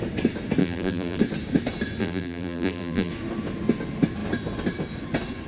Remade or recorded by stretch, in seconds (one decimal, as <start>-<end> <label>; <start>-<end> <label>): 0.0-0.6 recorded; 0.6-1.2 remade; 1.2-2.0 recorded; 2.0-3.1 remade; 3.1-5.5 recorded